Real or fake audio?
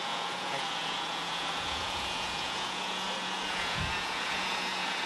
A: fake